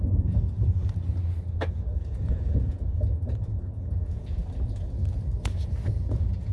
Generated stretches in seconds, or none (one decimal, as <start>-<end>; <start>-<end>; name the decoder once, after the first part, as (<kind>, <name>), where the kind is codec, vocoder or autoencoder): 0.0-0.8 (vocoder, Vocos); 2.0-4.4; 5.9-6.5